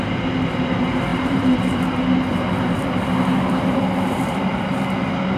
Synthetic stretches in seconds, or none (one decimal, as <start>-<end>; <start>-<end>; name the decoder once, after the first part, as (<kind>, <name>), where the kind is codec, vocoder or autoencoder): 1.1-1.8 (vocoder, BigVGAN v2); 2.3-4.6